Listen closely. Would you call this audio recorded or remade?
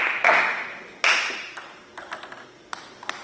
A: recorded